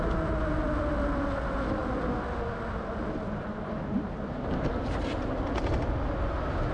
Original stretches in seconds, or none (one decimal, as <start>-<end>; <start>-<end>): 0.0-6.7